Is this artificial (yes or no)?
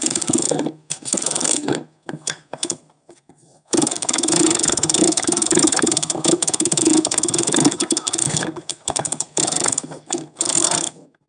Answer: yes